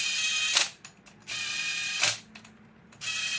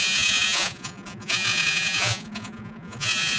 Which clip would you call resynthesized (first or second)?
second